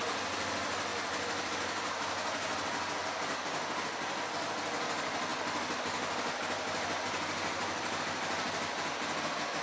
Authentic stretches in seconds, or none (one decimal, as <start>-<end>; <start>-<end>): 0.0-9.6